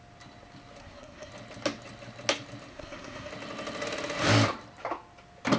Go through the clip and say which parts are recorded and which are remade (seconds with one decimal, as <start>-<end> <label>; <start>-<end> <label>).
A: 0.0-0.8 recorded; 0.8-1.3 remade; 1.3-2.7 recorded; 2.7-3.3 remade; 3.3-5.6 recorded